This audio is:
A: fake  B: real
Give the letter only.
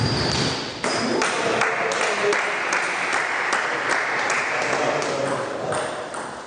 B